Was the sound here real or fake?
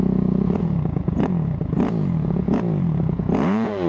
fake